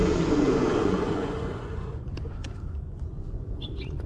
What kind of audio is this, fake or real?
fake